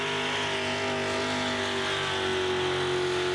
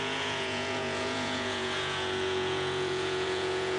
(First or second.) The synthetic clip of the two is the second